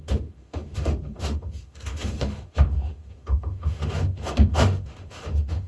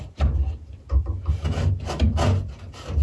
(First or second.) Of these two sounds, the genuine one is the second